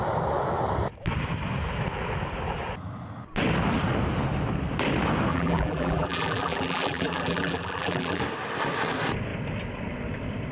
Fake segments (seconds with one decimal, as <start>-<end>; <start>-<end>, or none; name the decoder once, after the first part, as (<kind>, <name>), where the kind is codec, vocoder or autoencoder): 5.3-8.2 (vocoder, BigVGAN v2)